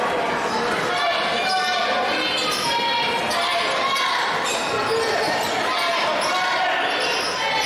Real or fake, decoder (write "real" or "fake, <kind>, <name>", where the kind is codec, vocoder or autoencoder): real